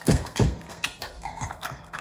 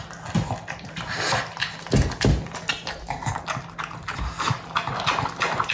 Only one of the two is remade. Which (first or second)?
first